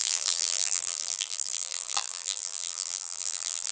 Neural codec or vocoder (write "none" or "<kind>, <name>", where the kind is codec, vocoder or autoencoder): vocoder, BigVGAN v2